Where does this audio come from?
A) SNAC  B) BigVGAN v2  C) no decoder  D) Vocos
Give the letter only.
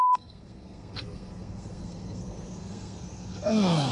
A